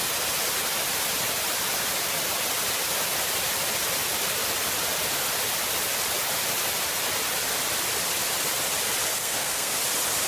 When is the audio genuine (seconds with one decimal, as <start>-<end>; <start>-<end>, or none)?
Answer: 0.0-9.1; 9.8-10.3